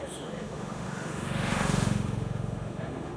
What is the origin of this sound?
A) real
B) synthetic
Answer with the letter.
B